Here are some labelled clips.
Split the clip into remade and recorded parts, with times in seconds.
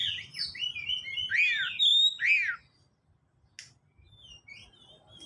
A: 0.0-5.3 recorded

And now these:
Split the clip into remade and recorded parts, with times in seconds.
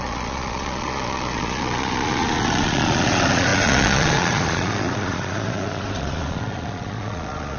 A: 0.0-7.6 remade